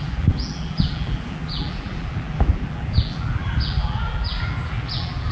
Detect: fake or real fake